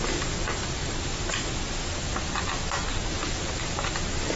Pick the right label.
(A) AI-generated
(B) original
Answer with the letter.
B